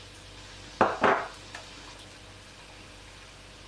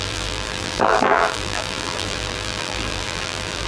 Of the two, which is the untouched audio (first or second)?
first